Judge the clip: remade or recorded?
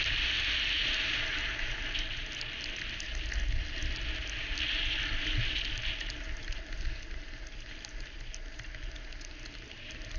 recorded